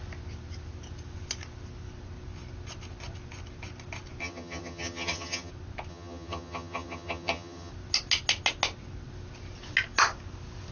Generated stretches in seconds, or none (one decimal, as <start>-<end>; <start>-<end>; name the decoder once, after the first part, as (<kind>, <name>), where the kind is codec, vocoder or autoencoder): 4.2-5.5 (vocoder, HiFi-GAN); 5.9-7.7